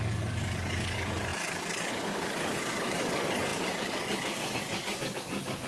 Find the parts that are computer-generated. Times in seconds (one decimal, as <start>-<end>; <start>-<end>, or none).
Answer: 0.0-5.7